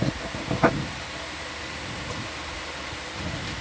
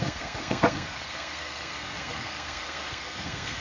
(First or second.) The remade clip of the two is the second